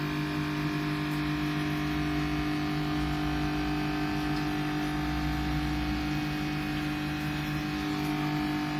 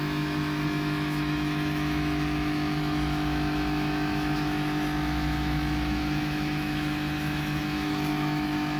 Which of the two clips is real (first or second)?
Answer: first